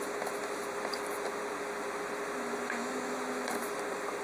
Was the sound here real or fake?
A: real